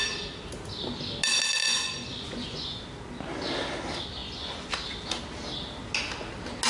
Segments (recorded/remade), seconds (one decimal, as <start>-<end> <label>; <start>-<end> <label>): 0.0-1.6 recorded; 1.6-2.8 remade; 2.8-4.2 recorded; 4.2-4.7 remade; 4.7-6.7 recorded